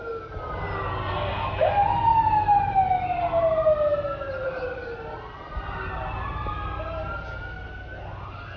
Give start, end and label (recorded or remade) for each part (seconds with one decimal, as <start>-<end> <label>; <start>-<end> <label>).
0.0-8.6 recorded